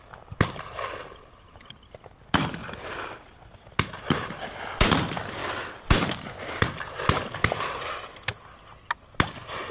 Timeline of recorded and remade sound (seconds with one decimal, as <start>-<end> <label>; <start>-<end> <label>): 0.0-9.7 recorded